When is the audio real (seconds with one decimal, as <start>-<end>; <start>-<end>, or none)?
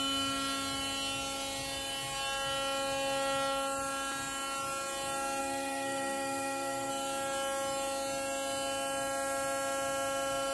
0.0-5.4; 6.9-10.5